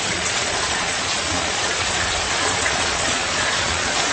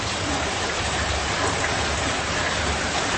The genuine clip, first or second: second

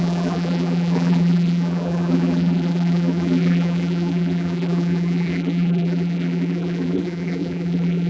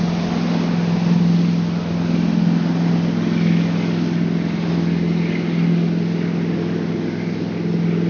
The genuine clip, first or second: second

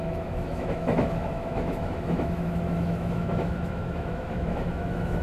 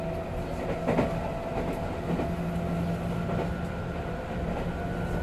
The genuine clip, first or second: second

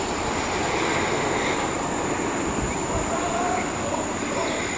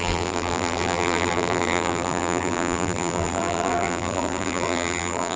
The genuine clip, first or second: first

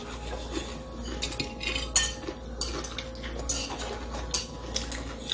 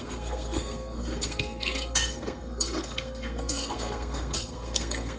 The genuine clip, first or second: first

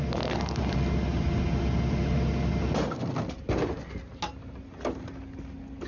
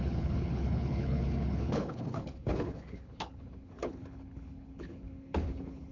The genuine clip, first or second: first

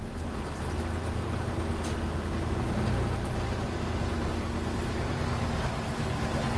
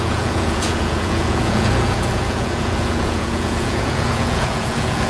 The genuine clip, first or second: first